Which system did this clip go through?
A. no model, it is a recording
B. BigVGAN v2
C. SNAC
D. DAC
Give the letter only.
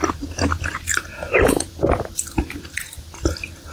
A